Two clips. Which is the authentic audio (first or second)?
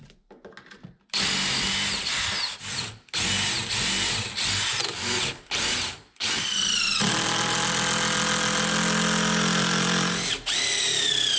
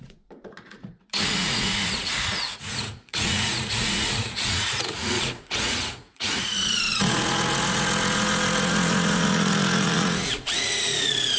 first